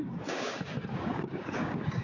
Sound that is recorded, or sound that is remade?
remade